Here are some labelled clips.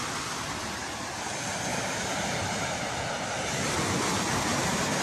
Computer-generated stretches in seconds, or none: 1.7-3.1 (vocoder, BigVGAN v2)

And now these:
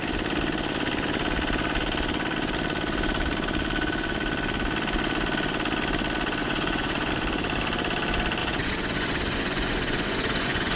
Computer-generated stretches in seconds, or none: 6.4-7.1 (vocoder, Vocos); 8.4-10.8

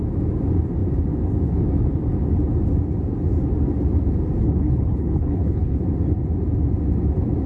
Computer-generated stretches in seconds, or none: 4.4-5.8 (codec, HILCodec)

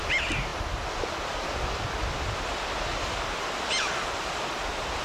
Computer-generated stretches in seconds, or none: none

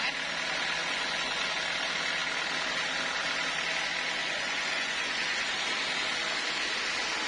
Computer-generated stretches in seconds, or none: 0.8-1.6 (vocoder, Vocos); 4.2-5.5

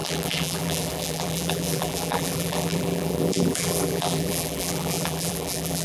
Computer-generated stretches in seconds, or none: 0.0-5.8 (vocoder, BigVGAN v2)

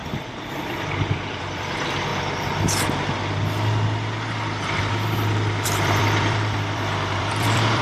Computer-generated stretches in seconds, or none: 0.0-2.1 (vocoder, BigVGAN v2); 4.8-7.8